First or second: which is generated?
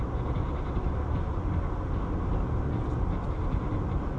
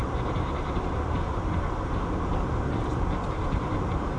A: second